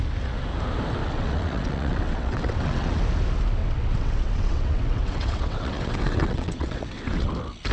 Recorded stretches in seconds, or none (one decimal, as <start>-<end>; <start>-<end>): 0.0-1.0; 3.0-3.6; 7.3-7.7